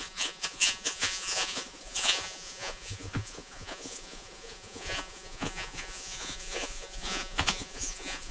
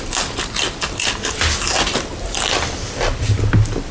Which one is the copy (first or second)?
first